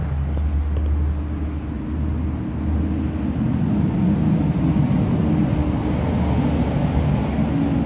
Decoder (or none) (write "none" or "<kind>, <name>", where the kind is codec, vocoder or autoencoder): none